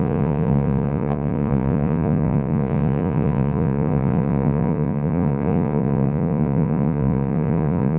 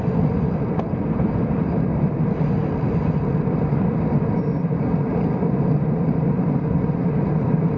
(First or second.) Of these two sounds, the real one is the second